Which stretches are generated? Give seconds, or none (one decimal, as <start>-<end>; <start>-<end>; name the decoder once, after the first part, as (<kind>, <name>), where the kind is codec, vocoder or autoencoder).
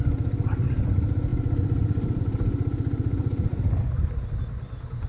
none